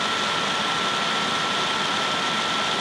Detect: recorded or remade recorded